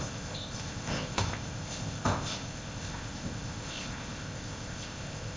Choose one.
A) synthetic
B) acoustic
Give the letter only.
A